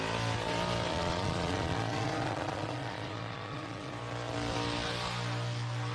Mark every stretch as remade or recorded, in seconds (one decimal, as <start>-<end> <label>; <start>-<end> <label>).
0.0-0.9 recorded; 0.9-3.9 remade; 3.9-5.9 recorded